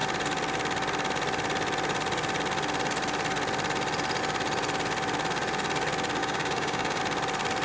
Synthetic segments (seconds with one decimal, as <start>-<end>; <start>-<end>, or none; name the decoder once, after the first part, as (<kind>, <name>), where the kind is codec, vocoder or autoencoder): 6.2-7.0 (codec, DAC)